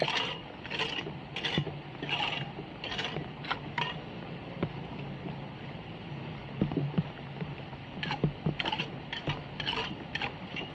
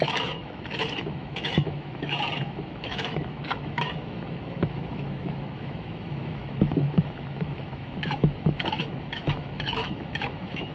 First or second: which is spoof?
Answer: second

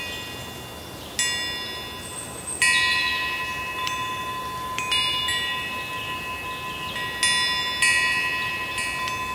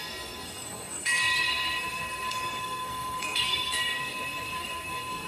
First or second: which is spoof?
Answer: second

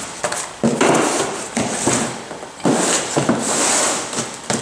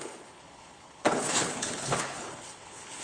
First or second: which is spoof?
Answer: second